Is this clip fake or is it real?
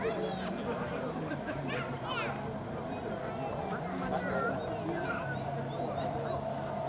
real